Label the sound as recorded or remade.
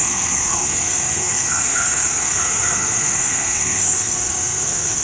remade